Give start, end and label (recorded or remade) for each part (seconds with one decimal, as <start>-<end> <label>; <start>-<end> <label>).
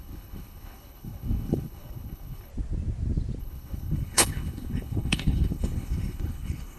0.0-2.5 remade; 2.5-3.4 recorded; 3.4-6.8 remade